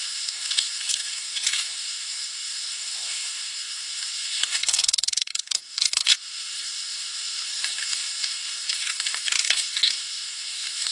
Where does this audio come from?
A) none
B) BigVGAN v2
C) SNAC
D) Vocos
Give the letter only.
C